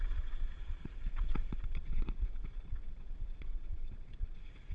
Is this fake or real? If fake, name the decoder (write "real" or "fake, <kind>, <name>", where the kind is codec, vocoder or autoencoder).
fake, vocoder, Vocos